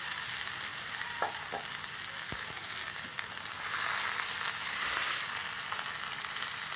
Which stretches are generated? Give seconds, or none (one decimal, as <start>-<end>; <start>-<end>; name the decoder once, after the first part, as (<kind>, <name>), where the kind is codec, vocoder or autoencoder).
4.7-5.2 (codec, SNAC)